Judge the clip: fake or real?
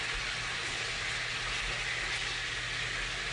real